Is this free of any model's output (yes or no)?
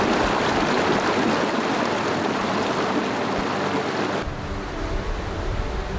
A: yes